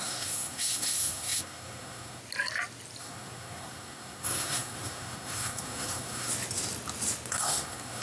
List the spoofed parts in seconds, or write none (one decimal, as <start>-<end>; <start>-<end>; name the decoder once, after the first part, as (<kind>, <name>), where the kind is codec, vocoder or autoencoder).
0.0-2.2 (codec, SNAC); 3.0-6.3; 7.3-8.0